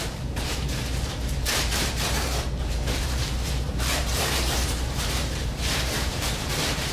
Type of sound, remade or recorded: remade